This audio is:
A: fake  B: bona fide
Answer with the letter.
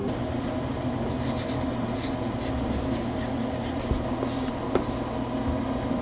B